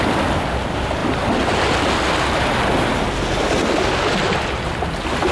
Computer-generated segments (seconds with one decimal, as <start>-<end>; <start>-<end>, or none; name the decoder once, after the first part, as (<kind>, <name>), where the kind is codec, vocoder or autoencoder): none